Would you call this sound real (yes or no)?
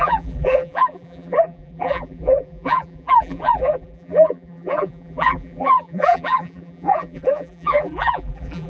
no